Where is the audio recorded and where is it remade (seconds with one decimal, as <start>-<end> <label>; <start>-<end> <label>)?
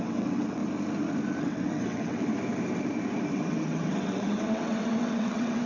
0.0-0.6 remade; 0.6-1.4 recorded; 1.4-2.3 remade; 2.3-3.3 recorded; 3.3-5.7 remade